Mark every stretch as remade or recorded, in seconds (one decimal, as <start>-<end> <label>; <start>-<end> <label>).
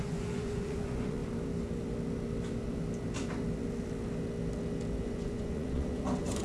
0.0-1.2 remade; 1.2-5.0 recorded; 5.0-6.4 remade